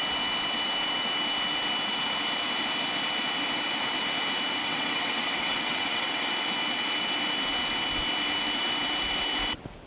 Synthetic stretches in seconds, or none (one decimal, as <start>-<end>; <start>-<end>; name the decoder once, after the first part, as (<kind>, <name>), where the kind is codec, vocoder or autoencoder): 4.6-6.3 (vocoder, WaveNeXt)

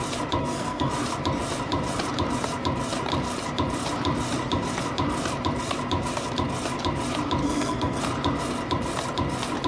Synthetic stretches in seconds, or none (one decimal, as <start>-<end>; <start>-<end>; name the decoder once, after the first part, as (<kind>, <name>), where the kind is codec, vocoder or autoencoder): 0.4-0.9 (codec, SNAC); 7.4-8.0